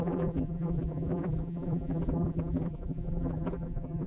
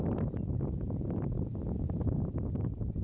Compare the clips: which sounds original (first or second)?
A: second